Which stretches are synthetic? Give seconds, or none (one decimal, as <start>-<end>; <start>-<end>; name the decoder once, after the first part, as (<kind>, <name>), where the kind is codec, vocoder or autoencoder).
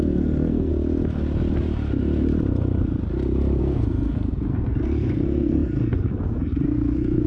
0.0-0.7 (codec, SNAC); 3.6-7.3